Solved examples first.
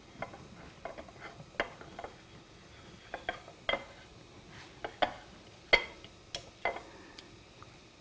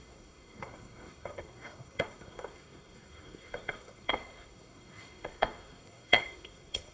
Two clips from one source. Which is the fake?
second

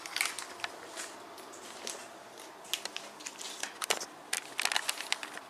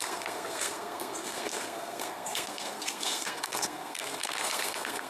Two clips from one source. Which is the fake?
second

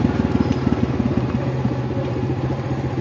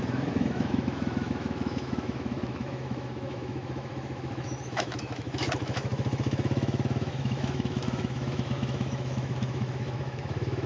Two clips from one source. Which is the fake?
second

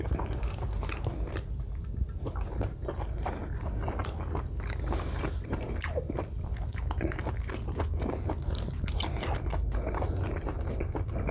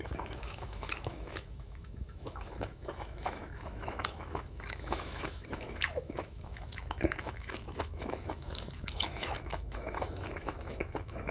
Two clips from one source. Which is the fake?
second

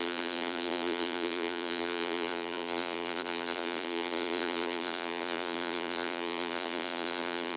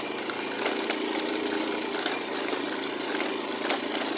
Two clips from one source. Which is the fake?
first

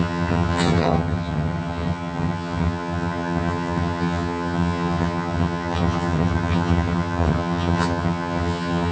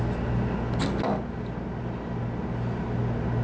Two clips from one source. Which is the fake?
first